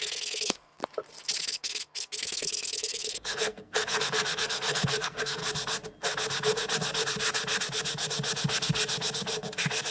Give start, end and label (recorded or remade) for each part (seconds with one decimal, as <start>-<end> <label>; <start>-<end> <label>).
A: 0.0-0.8 remade; 0.8-1.4 recorded; 1.4-5.4 remade; 5.4-9.9 recorded